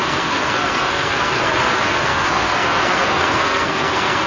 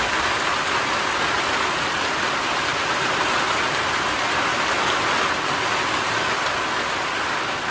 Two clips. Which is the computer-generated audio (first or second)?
first